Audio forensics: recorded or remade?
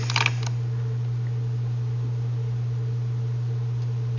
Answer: recorded